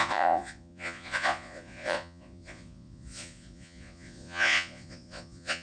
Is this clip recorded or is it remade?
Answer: remade